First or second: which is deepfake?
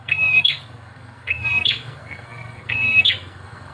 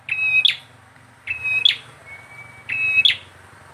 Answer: first